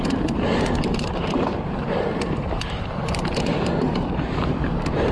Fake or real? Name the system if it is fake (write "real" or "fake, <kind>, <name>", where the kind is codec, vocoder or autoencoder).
fake, vocoder, BigVGAN v2